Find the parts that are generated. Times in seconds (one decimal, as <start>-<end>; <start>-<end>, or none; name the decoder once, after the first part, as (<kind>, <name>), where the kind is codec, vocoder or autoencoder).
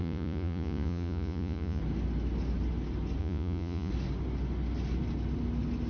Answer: 0.0-1.8 (vocoder, Vocos); 3.2-3.9